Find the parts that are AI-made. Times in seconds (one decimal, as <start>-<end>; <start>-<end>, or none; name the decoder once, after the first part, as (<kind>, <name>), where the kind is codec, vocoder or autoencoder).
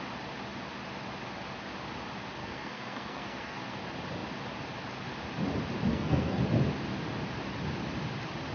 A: 2.4-3.8 (codec, SNAC); 5.9-6.4